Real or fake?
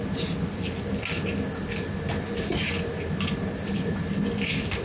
real